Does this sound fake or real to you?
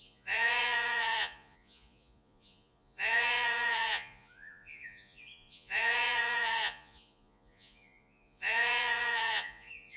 fake